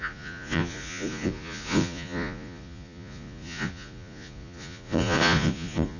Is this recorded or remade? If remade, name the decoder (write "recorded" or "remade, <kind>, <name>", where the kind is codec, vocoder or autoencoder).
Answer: remade, vocoder, Vocos